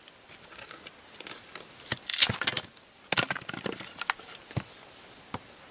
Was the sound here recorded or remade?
recorded